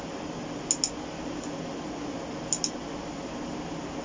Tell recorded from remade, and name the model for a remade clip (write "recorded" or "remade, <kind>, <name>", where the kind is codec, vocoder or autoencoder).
recorded